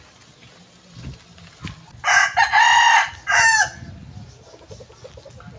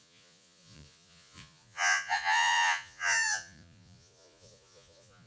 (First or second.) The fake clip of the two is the second